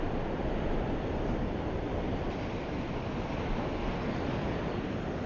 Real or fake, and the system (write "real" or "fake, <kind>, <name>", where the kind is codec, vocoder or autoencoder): real